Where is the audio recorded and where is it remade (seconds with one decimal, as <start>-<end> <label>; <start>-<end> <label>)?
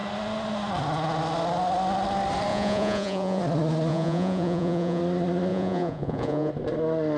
0.0-2.5 recorded; 2.5-3.4 remade; 3.4-3.9 recorded; 3.9-5.0 remade; 5.0-5.5 recorded; 5.5-6.5 remade; 6.5-7.2 recorded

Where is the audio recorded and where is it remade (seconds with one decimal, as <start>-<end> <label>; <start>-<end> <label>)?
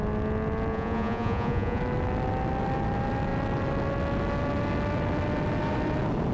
0.0-0.7 recorded; 0.7-1.8 remade; 1.8-6.3 recorded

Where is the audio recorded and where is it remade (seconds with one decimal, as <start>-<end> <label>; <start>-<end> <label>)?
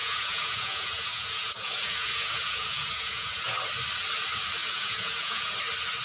0.0-3.6 remade; 3.6-4.6 recorded; 4.6-5.5 remade; 5.5-6.0 recorded